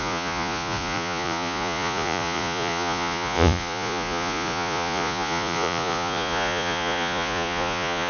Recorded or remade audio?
remade